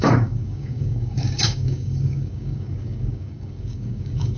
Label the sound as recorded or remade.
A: remade